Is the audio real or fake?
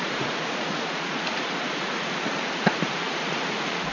fake